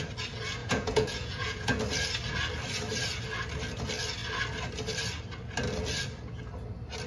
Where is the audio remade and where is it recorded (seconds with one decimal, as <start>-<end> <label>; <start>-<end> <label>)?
0.0-0.6 recorded; 0.6-1.8 remade; 1.8-7.1 recorded